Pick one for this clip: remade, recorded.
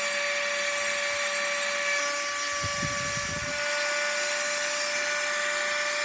recorded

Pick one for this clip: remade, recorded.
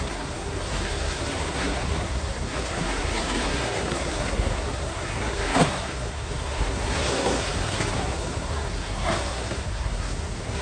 remade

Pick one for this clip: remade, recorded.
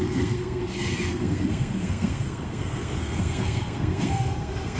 remade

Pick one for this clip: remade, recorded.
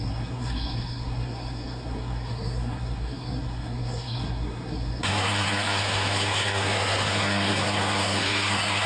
remade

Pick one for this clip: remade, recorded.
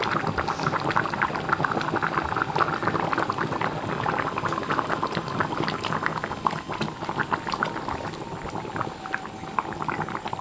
recorded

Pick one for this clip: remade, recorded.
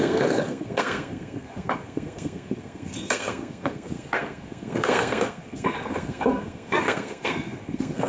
remade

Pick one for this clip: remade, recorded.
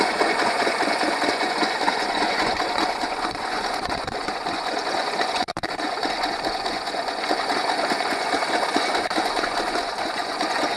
remade